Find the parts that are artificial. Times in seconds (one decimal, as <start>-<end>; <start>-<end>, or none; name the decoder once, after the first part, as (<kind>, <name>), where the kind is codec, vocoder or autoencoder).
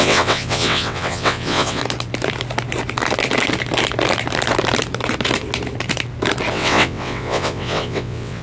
0.0-1.8 (vocoder, WaveNeXt); 6.5-8.4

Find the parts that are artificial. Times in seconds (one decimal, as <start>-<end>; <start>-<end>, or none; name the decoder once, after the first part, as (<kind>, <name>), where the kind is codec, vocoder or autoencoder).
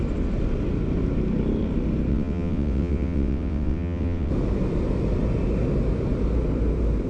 2.1-4.3 (vocoder, WaveNeXt)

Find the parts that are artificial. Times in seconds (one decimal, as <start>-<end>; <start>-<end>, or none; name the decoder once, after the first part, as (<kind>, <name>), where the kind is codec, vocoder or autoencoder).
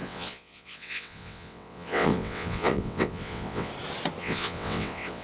0.0-3.7 (vocoder, WaveNeXt); 4.2-5.2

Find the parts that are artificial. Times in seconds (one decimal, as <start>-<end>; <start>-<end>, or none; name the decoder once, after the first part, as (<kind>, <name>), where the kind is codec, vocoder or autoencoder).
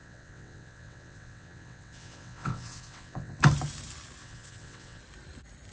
0.0-3.4 (vocoder, WaveNeXt); 4.2-5.0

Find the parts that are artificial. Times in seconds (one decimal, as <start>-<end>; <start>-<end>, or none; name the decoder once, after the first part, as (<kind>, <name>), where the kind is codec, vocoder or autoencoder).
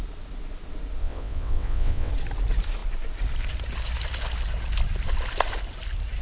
1.0-2.1 (vocoder, WaveNeXt)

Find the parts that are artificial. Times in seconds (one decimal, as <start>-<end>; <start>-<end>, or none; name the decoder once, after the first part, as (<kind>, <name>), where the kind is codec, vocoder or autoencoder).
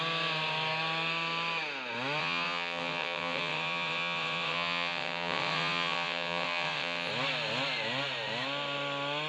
2.2-7.1 (vocoder, WaveNeXt)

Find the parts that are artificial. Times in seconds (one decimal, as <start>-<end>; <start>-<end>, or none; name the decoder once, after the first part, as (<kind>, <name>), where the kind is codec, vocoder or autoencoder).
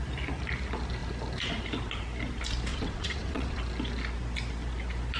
2.7-3.6 (vocoder, WaveNeXt)